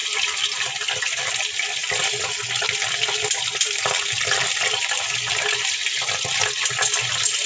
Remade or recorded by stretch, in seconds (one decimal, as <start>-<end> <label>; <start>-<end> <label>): 0.0-7.5 recorded